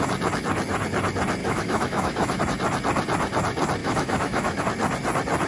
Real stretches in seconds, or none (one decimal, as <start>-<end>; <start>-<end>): 0.0-1.4; 2.4-3.8; 4.6-5.5